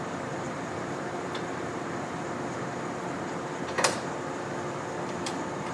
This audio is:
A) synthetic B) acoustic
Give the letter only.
A